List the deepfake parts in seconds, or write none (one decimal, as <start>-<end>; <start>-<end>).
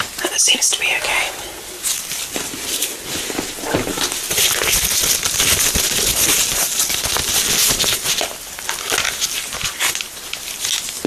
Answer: 6.1-8.7